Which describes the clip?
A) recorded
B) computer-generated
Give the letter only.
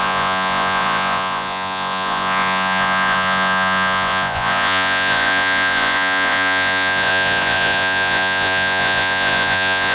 B